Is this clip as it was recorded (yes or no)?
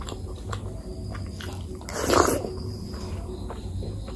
yes